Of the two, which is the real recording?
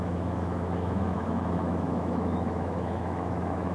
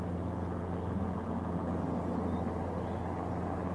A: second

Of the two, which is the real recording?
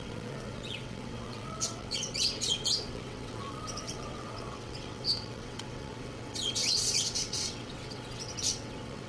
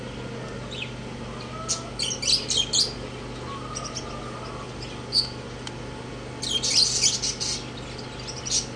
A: second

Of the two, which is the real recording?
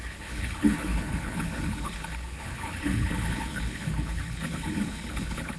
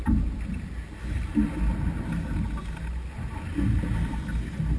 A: second